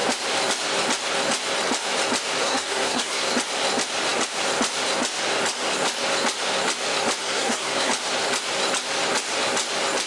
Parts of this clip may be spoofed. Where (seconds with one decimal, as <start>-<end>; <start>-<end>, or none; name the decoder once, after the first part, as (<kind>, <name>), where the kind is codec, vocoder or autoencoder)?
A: 2.4-3.3 (codec, SNAC); 7.2-7.9